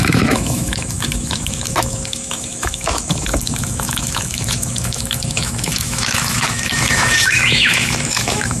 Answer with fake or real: fake